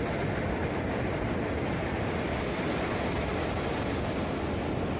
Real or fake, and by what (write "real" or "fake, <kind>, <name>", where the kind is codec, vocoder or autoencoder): real